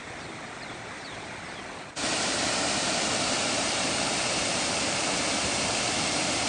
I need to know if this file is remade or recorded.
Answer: remade